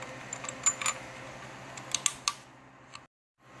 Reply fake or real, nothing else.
real